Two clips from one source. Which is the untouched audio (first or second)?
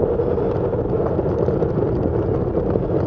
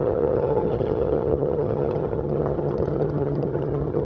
first